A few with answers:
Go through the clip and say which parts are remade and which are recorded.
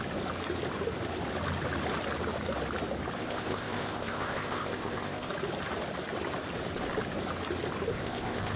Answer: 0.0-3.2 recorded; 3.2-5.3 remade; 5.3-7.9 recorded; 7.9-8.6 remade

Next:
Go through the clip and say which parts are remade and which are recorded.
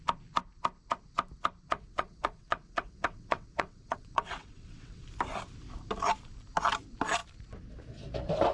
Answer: 0.0-1.7 recorded; 1.7-5.0 remade; 5.0-8.5 recorded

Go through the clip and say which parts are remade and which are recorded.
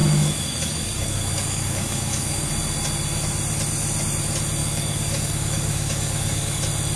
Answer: 0.0-2.5 remade; 2.5-4.6 recorded; 4.6-6.6 remade; 6.6-7.0 recorded